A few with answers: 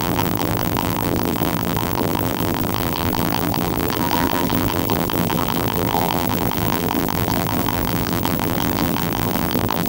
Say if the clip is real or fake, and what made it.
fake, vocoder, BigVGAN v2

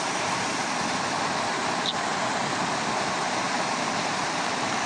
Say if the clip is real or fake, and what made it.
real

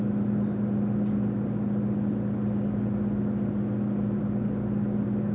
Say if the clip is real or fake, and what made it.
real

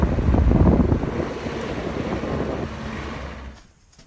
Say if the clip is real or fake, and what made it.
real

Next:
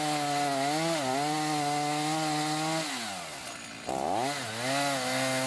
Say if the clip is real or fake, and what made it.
real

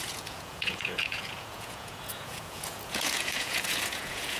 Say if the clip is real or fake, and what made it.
fake, vocoder, Vocos